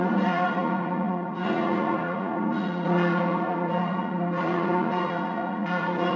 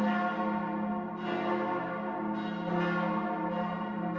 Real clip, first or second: second